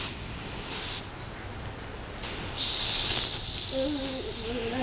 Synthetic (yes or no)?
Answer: no